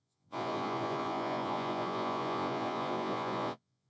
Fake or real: fake